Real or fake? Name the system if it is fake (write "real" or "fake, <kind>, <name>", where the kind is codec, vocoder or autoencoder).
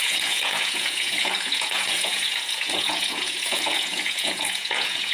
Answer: fake, vocoder, Vocos